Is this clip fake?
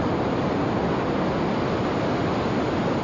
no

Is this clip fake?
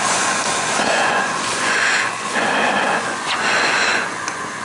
yes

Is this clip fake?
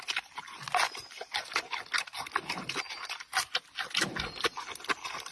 no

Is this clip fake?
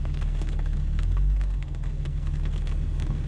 yes